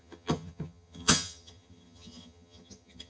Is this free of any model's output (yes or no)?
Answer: no